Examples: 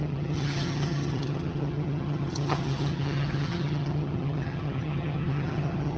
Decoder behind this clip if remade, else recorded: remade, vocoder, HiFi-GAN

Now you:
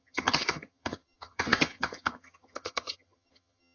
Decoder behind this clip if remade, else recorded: remade, vocoder, HiFi-GAN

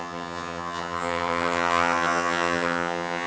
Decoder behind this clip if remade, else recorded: remade, vocoder, HiFi-GAN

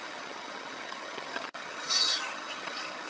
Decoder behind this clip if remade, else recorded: remade, vocoder, HiFi-GAN